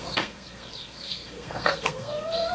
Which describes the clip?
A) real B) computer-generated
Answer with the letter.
B